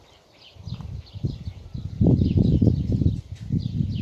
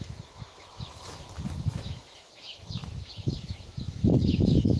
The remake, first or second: second